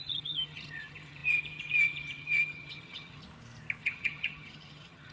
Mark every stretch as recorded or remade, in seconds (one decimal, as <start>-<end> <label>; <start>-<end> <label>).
0.0-3.2 remade; 3.2-3.8 recorded; 3.8-5.1 remade